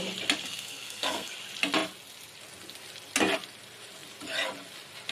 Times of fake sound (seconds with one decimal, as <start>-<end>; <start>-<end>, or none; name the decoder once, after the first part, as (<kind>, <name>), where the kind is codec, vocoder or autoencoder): 0.4-1.3 (codec, SNAC)

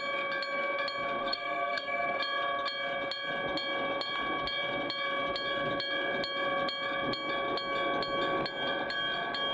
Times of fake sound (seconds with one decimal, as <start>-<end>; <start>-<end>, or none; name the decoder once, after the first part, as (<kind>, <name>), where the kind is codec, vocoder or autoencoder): 1.2-2.2 (codec, SNAC)

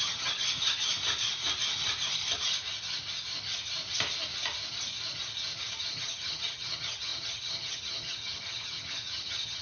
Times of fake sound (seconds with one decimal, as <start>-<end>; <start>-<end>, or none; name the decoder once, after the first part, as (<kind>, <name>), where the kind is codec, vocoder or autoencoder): 0.0-0.9 (vocoder, HiFi-GAN); 5.9-9.6

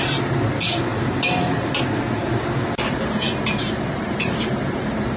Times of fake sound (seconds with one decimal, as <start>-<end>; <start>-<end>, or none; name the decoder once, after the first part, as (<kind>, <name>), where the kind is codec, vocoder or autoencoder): 0.9-1.8 (vocoder, BigVGAN v2); 2.2-5.2